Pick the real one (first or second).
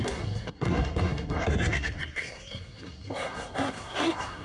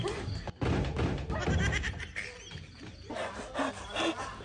second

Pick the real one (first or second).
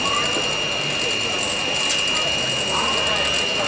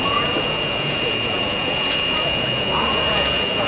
first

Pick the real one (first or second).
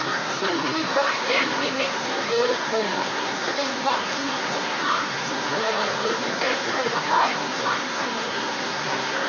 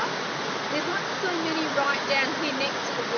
second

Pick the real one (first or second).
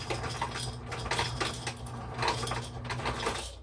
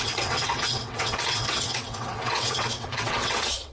first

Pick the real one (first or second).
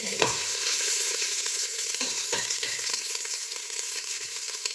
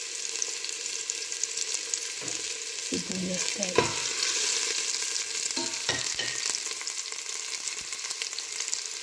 second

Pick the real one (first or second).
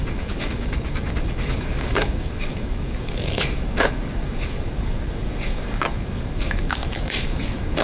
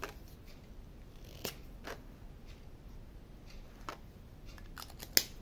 second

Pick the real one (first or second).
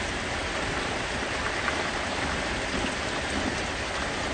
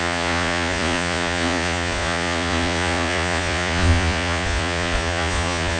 first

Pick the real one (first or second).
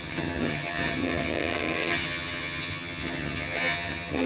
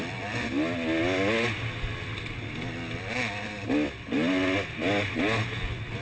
second